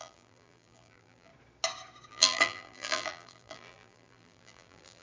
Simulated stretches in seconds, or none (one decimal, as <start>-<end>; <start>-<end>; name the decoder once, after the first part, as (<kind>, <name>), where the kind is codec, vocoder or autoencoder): 0.0-1.3 (vocoder, BigVGAN v2); 2.1-5.0